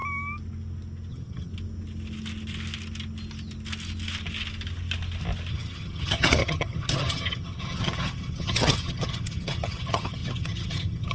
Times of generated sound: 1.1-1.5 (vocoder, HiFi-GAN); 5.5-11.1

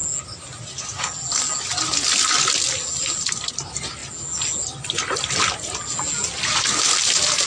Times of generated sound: none

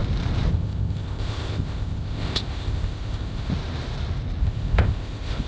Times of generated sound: 0.5-3.5 (codec, ZipCodec); 4.4-5.5

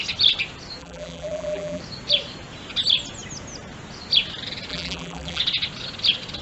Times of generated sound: 0.8-1.8 (vocoder, BigVGAN v2); 4.7-5.4

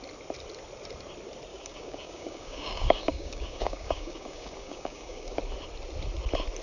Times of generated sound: 1.5-5.4 (codec, DAC)

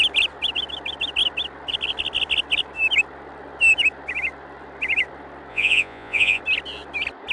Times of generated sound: 5.5-6.4 (vocoder, Vocos)